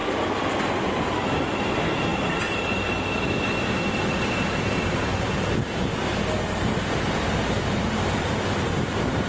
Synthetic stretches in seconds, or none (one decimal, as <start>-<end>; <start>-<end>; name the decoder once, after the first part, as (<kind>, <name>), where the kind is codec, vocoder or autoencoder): 0.7-9.3 (vocoder, BigVGAN v2)